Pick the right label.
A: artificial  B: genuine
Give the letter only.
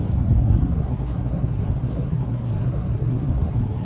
A